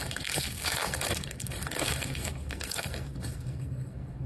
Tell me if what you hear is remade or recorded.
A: remade